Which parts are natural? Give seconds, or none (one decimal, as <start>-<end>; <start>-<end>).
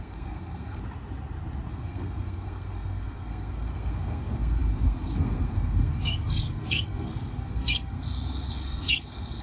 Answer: 0.8-1.7